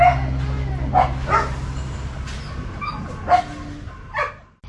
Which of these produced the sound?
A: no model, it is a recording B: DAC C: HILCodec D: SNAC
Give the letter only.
A